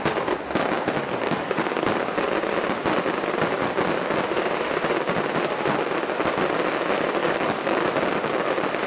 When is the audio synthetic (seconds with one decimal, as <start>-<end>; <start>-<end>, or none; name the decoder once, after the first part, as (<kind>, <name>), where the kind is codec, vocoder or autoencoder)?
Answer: 1.0-2.0 (codec, DAC); 7.2-7.8